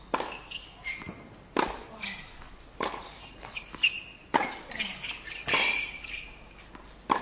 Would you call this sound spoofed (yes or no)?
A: no